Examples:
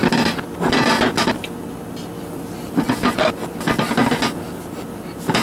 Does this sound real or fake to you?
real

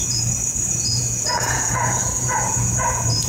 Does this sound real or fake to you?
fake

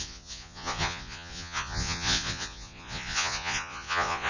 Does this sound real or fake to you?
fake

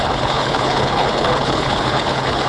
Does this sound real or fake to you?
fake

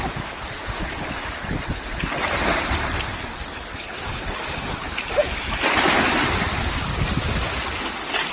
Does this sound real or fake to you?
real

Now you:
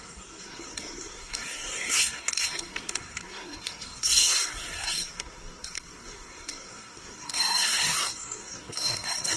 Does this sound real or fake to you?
fake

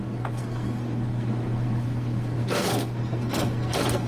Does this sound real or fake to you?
fake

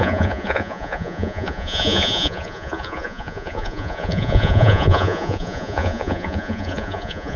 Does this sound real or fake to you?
fake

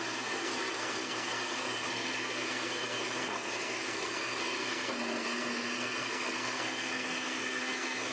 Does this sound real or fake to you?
fake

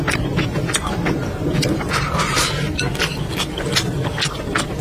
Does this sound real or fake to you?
real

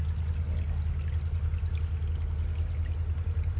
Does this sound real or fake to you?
real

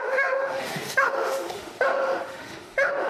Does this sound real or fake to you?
fake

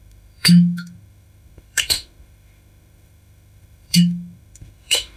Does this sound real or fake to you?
fake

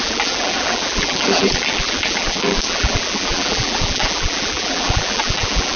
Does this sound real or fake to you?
fake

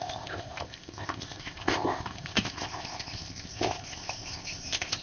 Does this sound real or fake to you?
fake